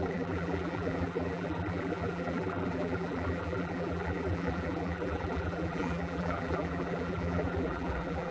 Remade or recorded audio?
remade